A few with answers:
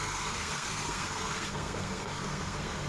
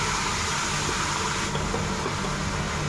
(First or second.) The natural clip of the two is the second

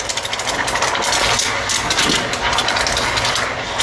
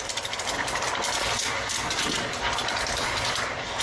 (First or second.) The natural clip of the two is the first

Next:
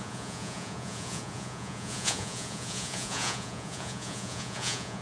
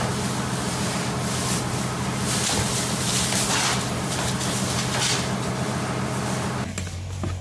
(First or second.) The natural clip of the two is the second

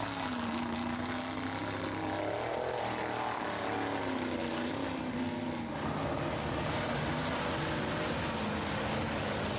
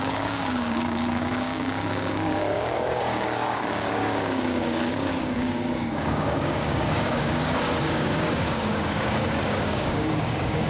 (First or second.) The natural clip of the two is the first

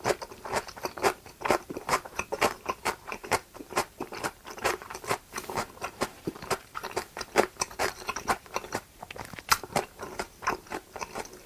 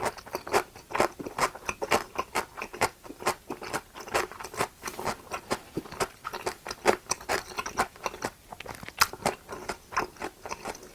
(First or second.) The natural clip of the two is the second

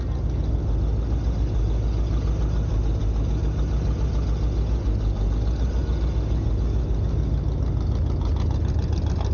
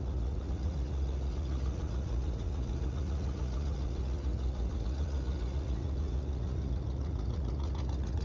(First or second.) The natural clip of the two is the first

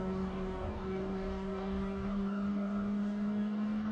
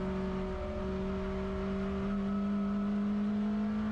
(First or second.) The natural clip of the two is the second